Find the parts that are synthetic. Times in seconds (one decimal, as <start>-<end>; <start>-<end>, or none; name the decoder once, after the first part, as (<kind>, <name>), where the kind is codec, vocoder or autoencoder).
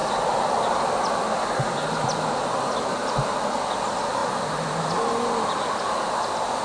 none